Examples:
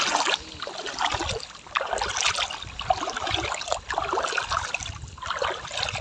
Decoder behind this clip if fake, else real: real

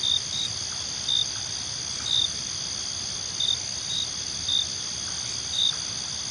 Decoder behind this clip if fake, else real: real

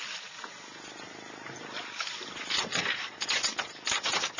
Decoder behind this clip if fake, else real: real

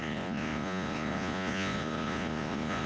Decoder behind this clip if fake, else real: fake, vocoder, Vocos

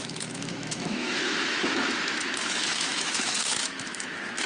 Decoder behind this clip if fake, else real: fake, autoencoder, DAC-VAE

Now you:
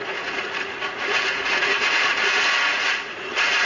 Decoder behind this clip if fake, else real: fake, vocoder, Vocos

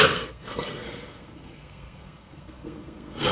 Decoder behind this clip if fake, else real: fake, codec, SNAC